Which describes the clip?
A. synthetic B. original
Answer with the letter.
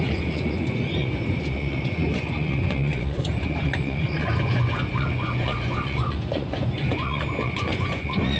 A